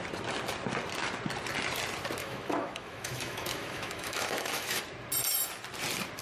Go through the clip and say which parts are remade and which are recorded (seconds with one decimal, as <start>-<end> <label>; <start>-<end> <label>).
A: 0.0-2.2 recorded; 2.2-4.8 remade; 4.8-6.2 recorded